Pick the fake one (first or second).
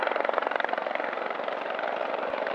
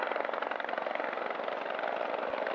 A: first